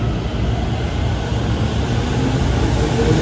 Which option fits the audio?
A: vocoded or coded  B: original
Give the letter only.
B